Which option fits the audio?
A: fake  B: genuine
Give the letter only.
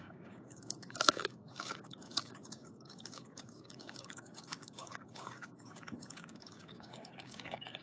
A